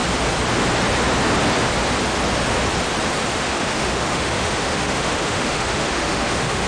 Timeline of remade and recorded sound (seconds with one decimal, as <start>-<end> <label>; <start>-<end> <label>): 0.0-3.3 recorded; 3.3-6.7 remade